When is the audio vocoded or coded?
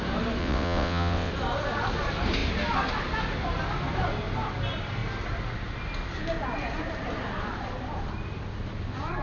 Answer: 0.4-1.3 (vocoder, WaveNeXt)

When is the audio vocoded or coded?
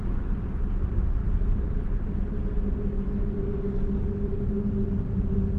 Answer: none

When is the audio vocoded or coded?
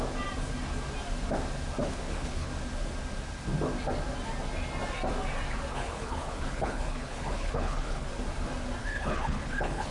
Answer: 1.8-2.5 (codec, HILCodec); 5.7-8.1; 8.8-9.9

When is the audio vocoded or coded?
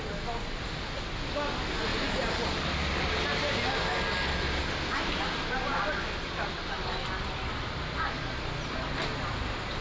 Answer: none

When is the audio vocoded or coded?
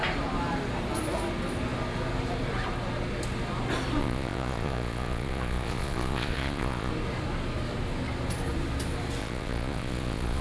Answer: 4.0-6.9 (vocoder, Vocos); 9.2-10.4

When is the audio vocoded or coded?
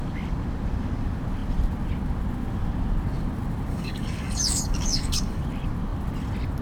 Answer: 3.7-5.4 (codec, DAC)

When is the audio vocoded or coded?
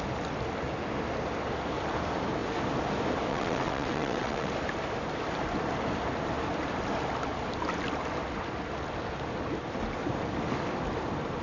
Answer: 3.3-4.5 (vocoder, WaveNeXt)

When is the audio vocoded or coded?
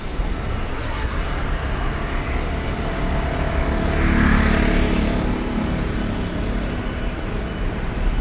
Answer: 0.7-1.2 (codec, SNAC)